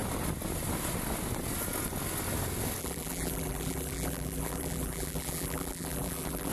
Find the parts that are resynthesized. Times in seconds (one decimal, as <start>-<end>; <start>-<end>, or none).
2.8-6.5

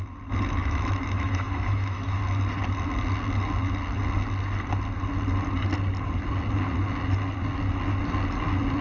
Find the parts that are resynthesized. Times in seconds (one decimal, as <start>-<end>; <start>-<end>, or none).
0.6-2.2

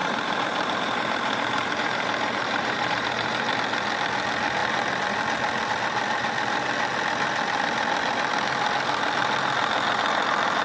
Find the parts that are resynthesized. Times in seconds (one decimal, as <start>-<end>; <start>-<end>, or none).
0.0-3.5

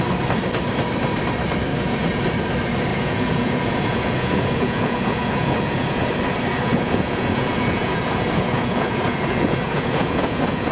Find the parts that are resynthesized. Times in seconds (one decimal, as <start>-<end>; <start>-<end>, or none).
1.7-2.2; 2.9-6.1; 6.5-10.7